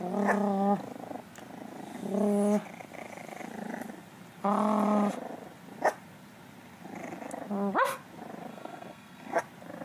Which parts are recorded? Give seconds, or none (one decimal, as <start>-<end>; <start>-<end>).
0.0-8.5; 9.4-9.8